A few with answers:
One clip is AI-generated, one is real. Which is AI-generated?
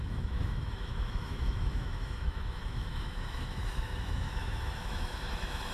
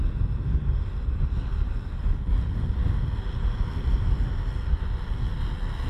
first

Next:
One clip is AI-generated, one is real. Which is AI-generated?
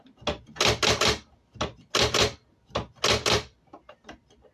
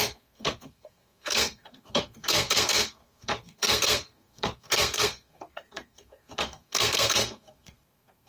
second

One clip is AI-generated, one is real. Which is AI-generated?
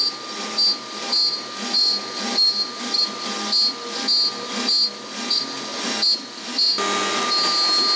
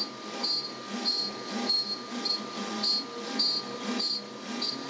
second